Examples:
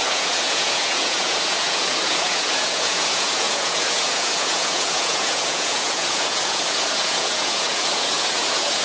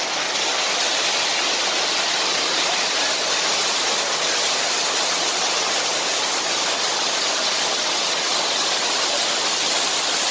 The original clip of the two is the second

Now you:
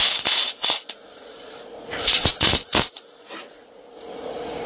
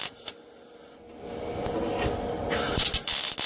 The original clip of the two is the second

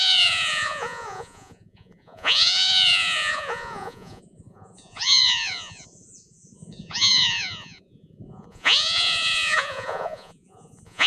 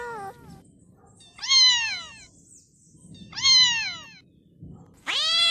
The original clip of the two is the second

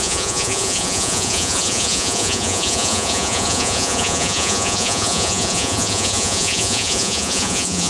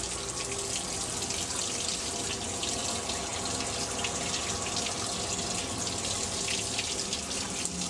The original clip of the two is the second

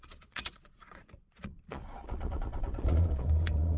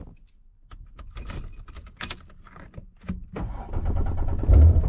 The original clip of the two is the second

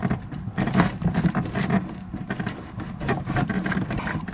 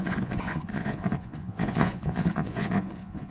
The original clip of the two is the first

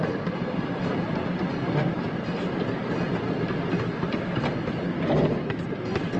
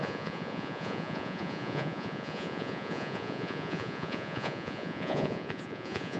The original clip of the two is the first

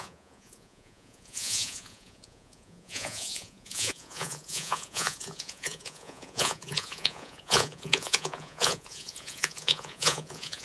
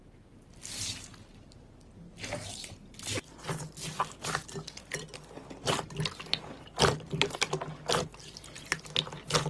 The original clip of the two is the second